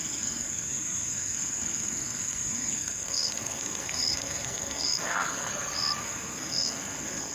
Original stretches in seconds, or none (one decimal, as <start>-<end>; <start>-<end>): 5.5-6.0